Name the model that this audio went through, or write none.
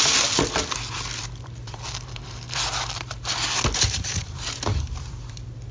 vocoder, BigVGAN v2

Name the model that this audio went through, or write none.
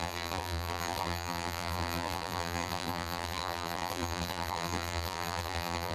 vocoder, BigVGAN v2